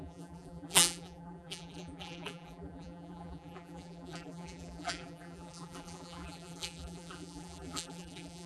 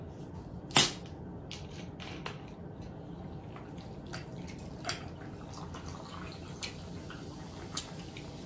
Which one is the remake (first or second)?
first